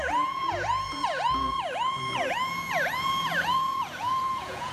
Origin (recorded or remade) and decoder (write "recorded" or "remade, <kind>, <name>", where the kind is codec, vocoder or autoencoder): remade, vocoder, Vocos